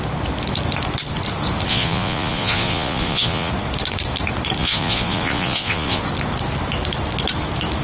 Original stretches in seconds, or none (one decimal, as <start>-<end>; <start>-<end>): 0.0-1.7; 3.5-4.6; 6.0-7.8